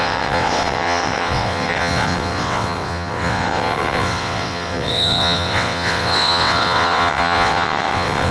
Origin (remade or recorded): remade